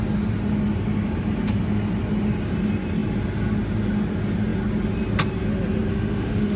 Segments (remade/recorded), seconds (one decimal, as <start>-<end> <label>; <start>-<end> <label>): 0.0-5.9 recorded; 5.9-6.6 remade

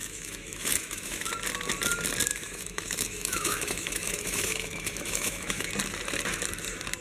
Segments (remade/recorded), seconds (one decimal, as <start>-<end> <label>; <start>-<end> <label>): 0.0-1.3 remade; 1.3-2.3 recorded; 2.3-5.7 remade; 5.7-7.0 recorded

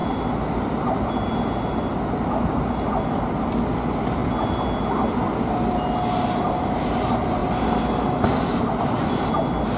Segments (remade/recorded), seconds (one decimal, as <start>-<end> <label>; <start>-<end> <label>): 0.0-9.8 recorded

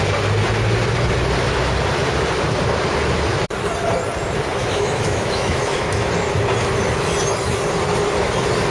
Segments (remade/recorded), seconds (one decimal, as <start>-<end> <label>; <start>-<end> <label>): 0.0-4.6 recorded; 4.6-6.1 remade; 6.1-8.7 recorded

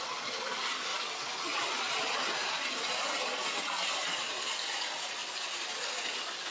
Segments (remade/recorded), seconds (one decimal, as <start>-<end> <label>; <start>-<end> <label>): 0.0-6.5 recorded

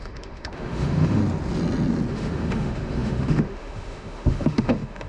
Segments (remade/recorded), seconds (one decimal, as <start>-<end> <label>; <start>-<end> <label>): 0.0-1.2 remade; 1.2-2.1 recorded; 2.1-5.1 remade

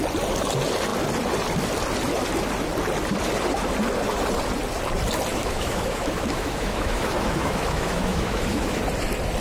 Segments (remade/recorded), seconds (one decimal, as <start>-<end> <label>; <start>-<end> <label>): 0.0-5.3 recorded; 5.3-8.8 remade; 8.8-9.4 recorded

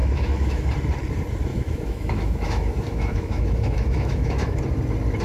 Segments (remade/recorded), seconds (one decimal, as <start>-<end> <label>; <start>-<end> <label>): 0.0-0.7 remade; 0.7-1.5 recorded; 1.5-4.6 remade; 4.6-5.2 recorded